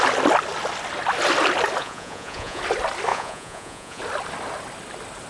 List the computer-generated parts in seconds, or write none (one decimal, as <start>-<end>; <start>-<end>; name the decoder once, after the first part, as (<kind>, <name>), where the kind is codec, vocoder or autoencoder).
1.8-2.6 (vocoder, Vocos); 3.1-4.0